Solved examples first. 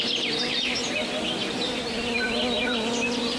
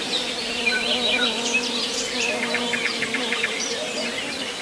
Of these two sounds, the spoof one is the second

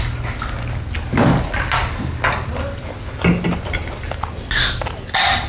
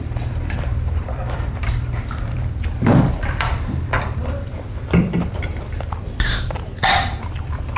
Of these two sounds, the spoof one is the second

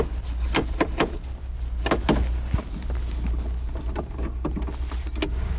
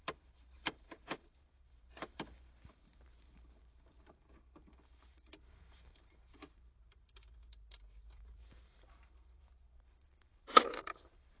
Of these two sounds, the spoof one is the second